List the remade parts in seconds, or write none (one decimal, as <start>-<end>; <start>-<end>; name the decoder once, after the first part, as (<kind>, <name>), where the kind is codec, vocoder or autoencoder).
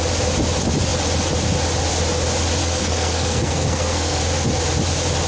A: 2.6-4.2 (codec, SNAC)